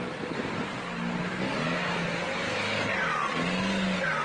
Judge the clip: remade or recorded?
recorded